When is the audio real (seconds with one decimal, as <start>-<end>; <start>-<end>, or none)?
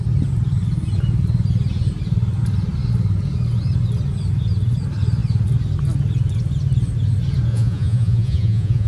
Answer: 0.0-7.5